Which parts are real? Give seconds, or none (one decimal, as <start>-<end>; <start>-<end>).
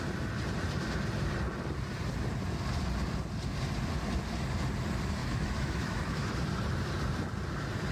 0.0-5.2; 6.3-7.9